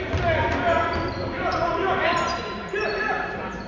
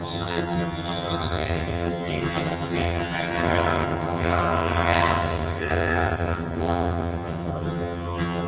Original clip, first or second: first